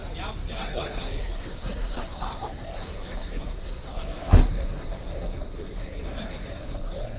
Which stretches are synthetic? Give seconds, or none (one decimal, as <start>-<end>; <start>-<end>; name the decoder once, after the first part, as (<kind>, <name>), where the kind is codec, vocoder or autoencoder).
0.5-7.2 (codec, SNAC)